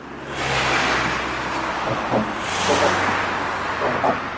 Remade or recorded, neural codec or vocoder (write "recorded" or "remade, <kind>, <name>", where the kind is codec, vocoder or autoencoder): recorded